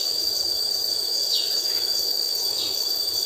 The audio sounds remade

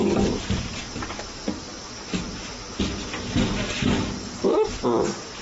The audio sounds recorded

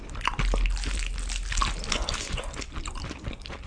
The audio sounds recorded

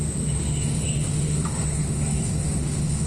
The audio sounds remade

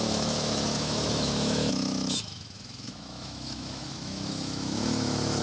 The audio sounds remade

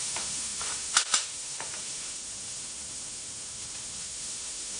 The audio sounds remade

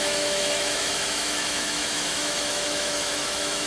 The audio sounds remade